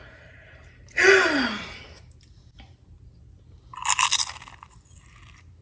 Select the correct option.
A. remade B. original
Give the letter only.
B